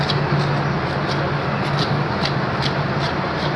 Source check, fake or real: real